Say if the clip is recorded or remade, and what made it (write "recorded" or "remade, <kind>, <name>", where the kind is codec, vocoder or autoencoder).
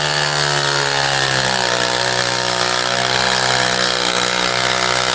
recorded